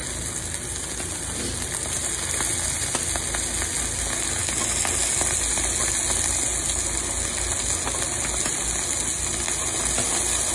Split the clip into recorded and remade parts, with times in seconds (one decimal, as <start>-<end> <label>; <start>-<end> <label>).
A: 0.0-10.5 recorded